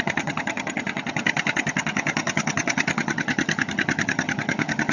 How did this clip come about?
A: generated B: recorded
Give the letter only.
A